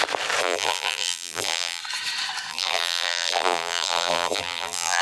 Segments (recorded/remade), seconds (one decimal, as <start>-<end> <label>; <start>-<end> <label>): 0.0-0.4 recorded; 0.4-1.8 remade; 1.8-2.5 recorded; 2.5-5.0 remade